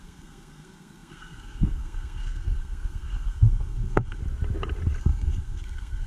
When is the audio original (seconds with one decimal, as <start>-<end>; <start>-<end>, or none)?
4.2-5.0